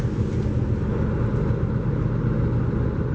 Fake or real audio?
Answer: real